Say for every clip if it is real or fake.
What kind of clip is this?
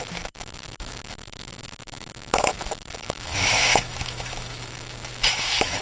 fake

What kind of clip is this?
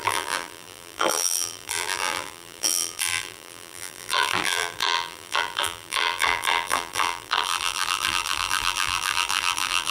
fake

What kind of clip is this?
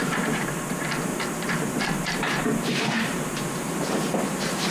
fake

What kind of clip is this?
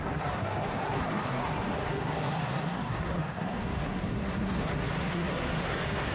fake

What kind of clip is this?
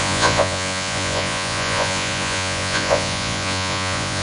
fake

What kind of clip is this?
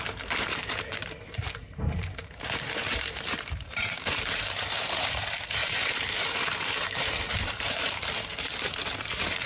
fake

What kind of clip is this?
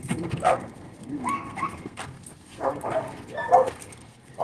fake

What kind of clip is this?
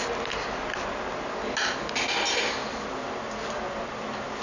real